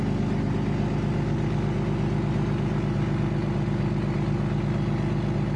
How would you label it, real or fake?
real